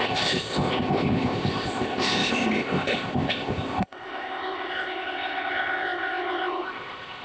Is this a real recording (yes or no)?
no